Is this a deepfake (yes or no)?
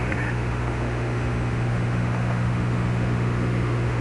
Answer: yes